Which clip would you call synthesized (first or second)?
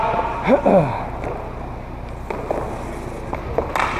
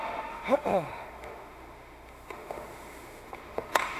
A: second